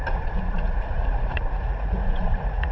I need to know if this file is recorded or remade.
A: remade